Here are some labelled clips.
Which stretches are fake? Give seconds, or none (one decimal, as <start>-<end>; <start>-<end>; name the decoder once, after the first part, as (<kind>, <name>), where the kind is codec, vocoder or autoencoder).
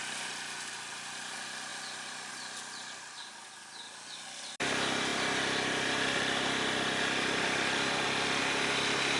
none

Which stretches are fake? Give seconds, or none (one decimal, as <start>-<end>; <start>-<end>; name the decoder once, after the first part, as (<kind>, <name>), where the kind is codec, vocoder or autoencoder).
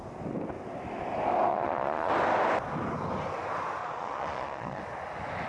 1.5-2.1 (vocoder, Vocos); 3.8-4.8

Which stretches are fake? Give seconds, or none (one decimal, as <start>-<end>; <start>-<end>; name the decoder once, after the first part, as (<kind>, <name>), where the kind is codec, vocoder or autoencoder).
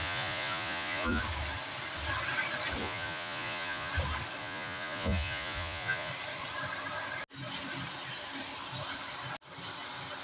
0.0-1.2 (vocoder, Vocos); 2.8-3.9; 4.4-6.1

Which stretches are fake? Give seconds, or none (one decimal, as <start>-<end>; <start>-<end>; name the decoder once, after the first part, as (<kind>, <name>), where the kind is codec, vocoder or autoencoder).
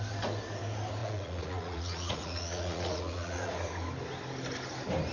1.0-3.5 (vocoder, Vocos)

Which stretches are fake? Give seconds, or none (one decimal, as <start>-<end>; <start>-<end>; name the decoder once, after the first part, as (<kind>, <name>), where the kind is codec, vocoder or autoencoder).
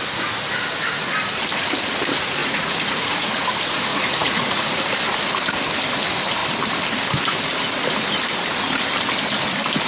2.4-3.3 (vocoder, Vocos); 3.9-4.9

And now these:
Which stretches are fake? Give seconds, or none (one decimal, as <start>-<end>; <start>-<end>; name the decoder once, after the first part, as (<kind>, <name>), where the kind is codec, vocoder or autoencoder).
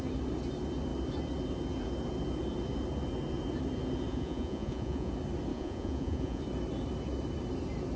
4.1-5.1 (vocoder, Vocos); 5.5-6.4